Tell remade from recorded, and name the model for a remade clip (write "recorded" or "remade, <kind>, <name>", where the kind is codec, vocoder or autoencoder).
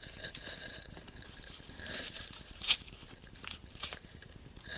remade, vocoder, BigVGAN v2